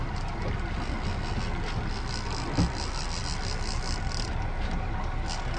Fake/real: real